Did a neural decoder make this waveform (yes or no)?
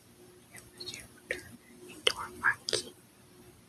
no